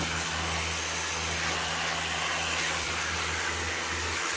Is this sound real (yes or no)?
yes